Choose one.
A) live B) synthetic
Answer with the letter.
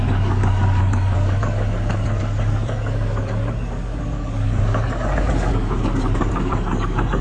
B